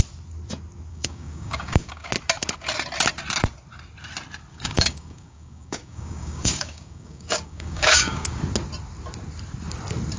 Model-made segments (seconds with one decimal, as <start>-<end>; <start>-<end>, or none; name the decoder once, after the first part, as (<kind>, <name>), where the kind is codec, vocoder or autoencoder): 0.9-2.1 (codec, DAC); 4.5-8.4